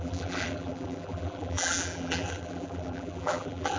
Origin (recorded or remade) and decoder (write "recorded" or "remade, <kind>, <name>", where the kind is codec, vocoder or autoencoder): remade, vocoder, BigVGAN v2